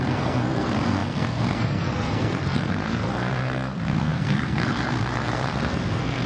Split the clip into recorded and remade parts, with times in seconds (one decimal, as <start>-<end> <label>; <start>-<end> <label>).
0.0-6.3 remade